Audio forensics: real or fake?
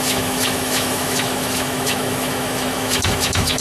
fake